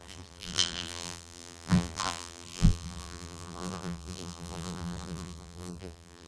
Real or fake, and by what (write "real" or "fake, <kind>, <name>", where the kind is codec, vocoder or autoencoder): fake, vocoder, BigVGAN v2